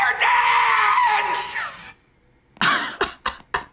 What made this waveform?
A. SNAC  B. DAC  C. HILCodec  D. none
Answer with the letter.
D